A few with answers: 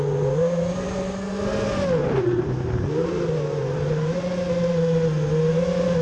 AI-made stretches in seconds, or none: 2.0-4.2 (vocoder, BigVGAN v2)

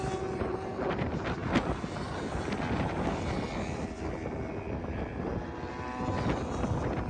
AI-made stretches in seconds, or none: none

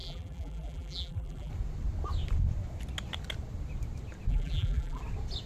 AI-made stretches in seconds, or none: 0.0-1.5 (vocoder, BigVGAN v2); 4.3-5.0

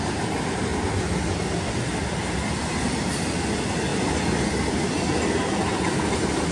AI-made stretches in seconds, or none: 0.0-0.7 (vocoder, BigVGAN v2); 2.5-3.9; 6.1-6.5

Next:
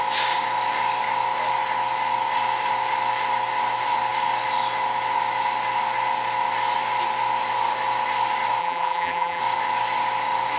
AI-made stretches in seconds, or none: 8.6-9.4 (vocoder, BigVGAN v2)

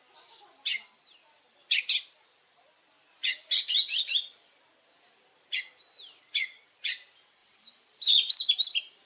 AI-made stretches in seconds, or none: 7.4-8.4 (vocoder, BigVGAN v2)